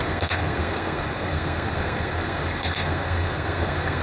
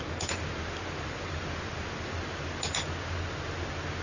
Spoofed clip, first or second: first